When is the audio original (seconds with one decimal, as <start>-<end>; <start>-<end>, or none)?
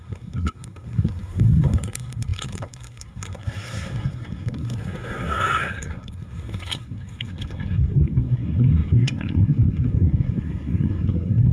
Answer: none